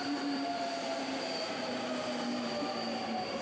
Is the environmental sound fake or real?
fake